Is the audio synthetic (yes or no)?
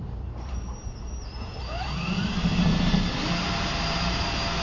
yes